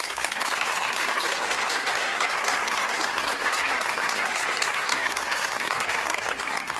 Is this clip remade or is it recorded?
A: remade